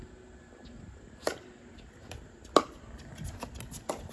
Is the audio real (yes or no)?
yes